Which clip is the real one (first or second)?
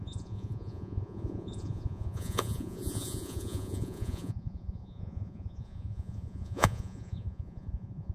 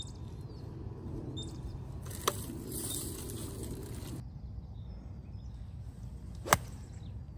second